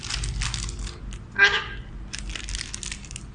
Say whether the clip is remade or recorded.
recorded